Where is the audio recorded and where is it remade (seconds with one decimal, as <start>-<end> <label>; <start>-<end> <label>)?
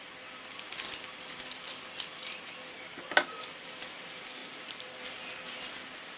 0.0-4.4 recorded; 4.4-6.2 remade